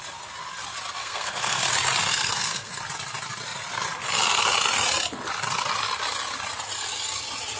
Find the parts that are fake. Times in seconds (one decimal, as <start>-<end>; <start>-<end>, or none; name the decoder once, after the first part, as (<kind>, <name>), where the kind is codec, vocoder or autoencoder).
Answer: 1.0-1.6 (codec, SNAC); 2.1-2.7